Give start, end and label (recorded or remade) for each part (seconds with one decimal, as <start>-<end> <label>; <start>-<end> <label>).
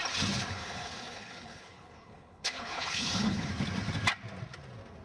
0.0-0.5 recorded; 0.5-3.5 remade; 3.5-5.0 recorded